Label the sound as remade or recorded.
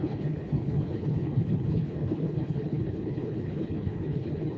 remade